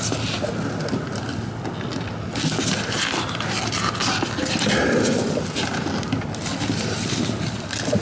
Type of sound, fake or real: real